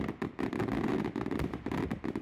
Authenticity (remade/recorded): remade